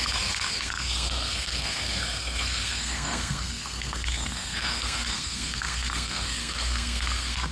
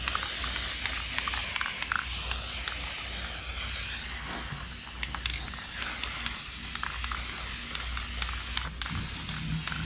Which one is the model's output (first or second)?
first